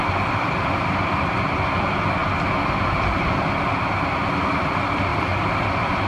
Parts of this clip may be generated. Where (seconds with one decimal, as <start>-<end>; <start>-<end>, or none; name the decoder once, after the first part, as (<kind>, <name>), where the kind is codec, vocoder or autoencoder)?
0.0-2.2 (vocoder, BigVGAN v2); 3.6-6.1